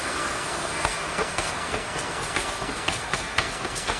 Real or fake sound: fake